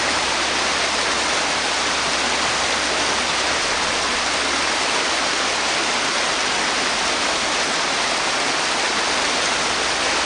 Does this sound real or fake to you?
real